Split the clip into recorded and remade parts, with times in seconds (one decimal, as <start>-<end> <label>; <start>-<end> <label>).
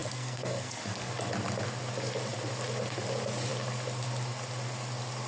0.0-1.1 remade; 1.1-5.3 recorded